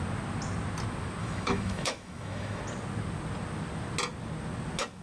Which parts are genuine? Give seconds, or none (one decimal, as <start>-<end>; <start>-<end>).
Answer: 0.0-1.2; 2.6-5.0